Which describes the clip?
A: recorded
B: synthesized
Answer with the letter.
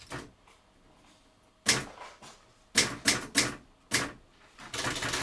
A